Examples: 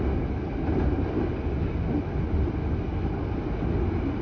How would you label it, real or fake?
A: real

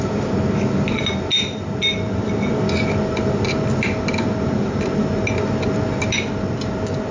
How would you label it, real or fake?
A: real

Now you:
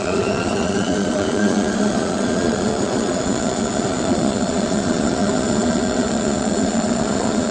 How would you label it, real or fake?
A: fake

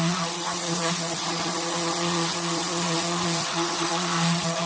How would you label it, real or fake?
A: fake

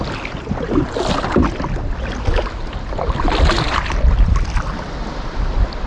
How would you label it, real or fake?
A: real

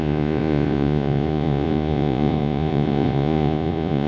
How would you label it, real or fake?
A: fake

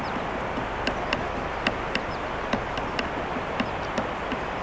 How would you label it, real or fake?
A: real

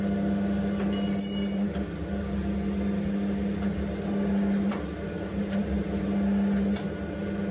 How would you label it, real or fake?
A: real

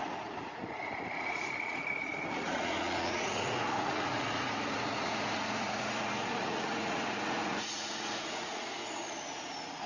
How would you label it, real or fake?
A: fake